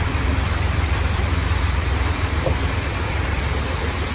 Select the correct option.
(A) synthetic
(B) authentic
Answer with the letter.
A